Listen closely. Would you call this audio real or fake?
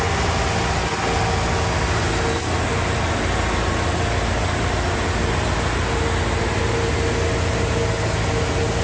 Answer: real